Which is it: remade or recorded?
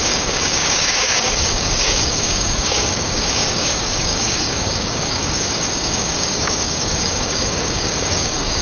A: remade